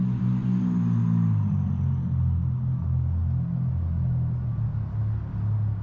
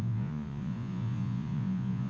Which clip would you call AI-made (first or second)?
second